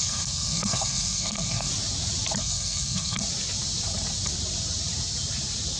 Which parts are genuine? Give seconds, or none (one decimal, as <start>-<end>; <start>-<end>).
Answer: 1.7-2.4; 3.2-5.8